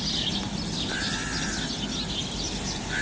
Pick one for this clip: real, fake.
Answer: real